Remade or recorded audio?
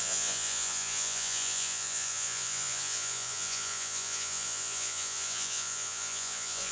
remade